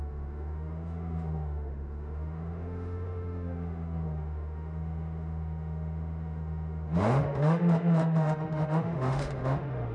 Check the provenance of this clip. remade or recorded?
remade